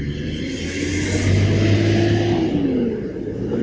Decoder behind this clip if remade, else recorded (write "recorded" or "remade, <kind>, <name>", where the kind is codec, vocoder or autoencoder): recorded